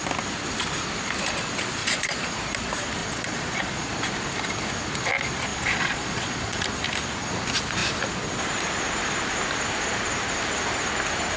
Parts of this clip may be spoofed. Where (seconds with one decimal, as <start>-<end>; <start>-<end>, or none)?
1.8-2.4; 3.0-3.9; 5.5-6.6